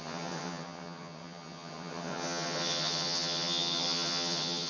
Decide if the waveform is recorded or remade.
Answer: remade